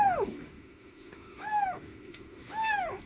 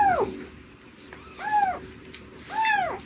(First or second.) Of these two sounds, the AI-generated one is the first